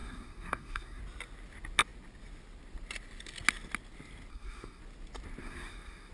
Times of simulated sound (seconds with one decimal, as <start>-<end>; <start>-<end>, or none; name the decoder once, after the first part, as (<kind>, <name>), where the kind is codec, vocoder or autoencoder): 0.0-1.0 (codec, SNAC); 4.3-4.8; 5.4-6.1